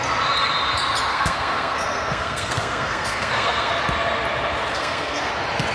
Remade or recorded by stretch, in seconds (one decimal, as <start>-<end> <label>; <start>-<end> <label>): 0.0-1.1 recorded; 1.1-3.7 remade; 3.7-4.7 recorded; 4.7-5.3 remade; 5.3-5.7 recorded